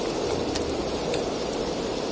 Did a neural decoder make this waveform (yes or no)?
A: no